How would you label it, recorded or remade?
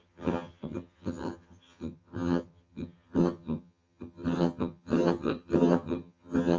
remade